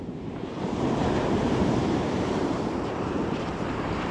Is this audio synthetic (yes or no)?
yes